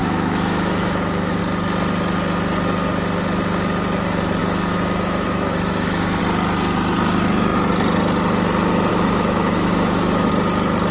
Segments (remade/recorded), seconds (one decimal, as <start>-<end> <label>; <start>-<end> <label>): 0.0-1.4 remade; 1.4-4.4 recorded; 4.4-6.2 remade; 6.2-8.9 recorded; 8.9-10.3 remade; 10.3-10.9 recorded